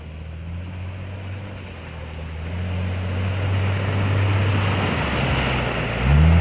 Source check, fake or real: real